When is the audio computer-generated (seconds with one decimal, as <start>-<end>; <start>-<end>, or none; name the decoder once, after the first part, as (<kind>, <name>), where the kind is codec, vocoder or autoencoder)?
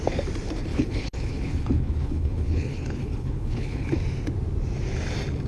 0.7-4.0 (codec, HILCodec)